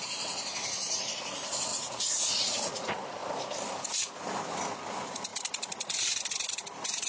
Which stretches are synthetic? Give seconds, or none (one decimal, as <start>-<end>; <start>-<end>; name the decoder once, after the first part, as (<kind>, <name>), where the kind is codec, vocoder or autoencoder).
1.7-2.7 (vocoder, Vocos)